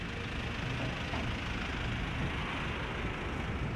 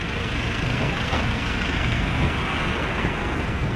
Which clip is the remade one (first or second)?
second